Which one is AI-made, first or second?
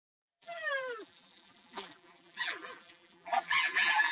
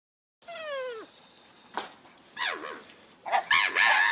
first